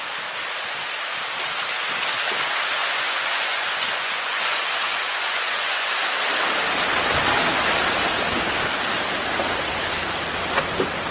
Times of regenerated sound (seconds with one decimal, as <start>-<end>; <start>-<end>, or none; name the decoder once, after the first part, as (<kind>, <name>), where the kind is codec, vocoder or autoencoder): 2.8-6.1 (vocoder, Vocos)